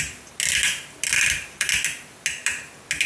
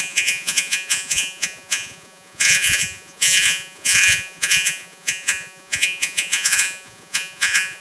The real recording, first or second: first